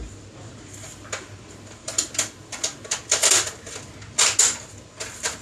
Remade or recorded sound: recorded